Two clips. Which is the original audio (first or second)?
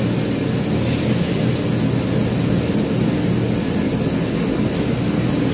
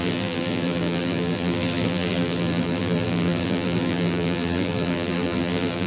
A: first